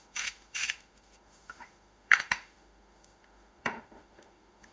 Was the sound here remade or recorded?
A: remade